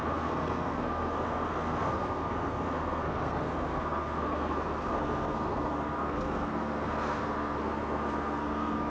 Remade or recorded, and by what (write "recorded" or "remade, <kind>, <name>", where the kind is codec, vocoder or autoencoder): remade, codec, SNAC